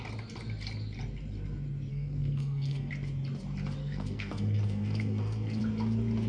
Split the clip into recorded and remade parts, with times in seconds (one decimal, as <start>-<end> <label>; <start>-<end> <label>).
0.0-1.9 recorded; 1.9-2.9 remade; 2.9-3.8 recorded; 3.8-5.6 remade; 5.6-6.3 recorded